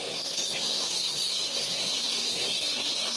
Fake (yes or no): yes